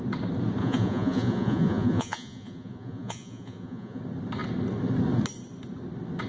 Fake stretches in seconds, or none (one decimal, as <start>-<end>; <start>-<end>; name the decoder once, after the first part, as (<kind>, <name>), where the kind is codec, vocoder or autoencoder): 0.6-4.0 (vocoder, Vocos)